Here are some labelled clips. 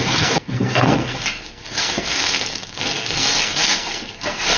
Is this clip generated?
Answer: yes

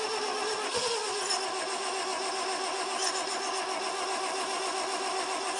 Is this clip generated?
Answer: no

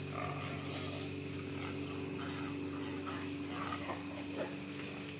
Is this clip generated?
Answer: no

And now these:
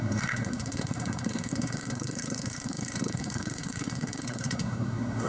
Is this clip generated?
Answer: yes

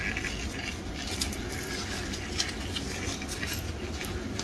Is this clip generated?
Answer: no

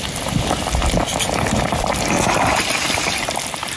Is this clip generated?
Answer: no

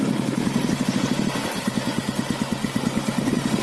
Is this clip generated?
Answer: no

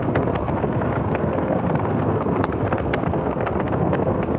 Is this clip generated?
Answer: yes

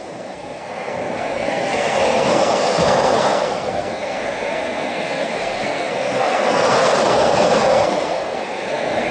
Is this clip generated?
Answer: yes